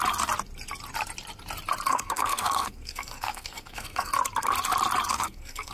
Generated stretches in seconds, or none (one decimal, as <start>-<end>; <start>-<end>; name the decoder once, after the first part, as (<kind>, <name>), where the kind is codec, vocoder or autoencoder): 1.9-4.1 (codec, SNAC); 5.1-5.7